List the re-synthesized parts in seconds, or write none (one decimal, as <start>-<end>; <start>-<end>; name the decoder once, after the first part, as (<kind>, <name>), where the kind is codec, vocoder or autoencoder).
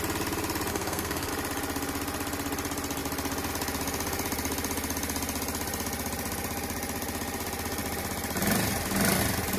0.7-1.3 (codec, SNAC)